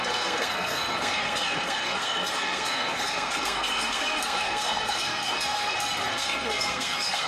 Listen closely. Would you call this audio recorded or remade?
remade